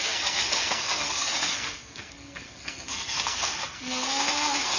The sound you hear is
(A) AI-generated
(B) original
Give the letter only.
A